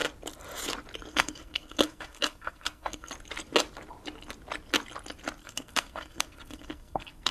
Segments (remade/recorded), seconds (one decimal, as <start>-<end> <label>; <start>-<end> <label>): 0.0-1.1 recorded; 1.1-3.1 remade; 3.1-5.4 recorded; 5.4-7.3 remade